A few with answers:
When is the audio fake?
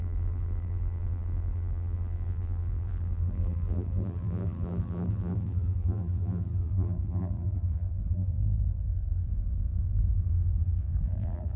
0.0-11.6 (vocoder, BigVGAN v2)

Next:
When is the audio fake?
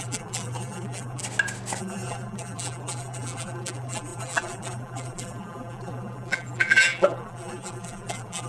0.0-1.2 (vocoder, BigVGAN v2); 1.8-8.5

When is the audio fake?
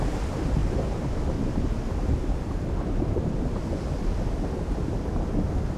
none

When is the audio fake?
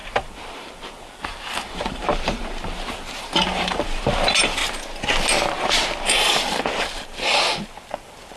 0.0-4.6 (vocoder, BigVGAN v2); 5.6-7.3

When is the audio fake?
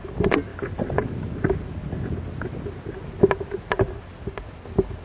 0.0-0.5 (vocoder, BigVGAN v2); 3.5-5.0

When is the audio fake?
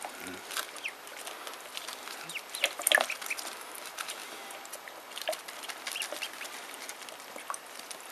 none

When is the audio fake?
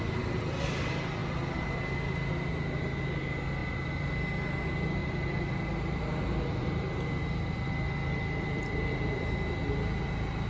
3.6-4.1 (vocoder, BigVGAN v2); 5.0-6.0; 6.6-9.2